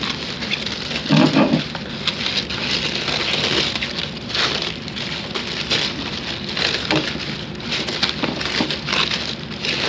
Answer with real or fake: real